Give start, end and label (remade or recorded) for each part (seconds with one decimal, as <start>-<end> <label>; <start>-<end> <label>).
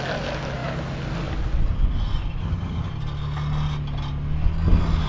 0.0-2.4 recorded; 2.4-2.9 remade; 2.9-5.1 recorded